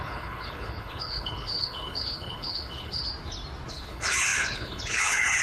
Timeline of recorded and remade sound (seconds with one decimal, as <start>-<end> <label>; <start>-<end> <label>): 0.0-3.0 remade; 3.0-3.7 recorded; 3.7-5.4 remade